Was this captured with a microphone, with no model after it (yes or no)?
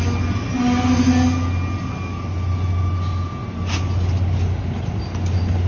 yes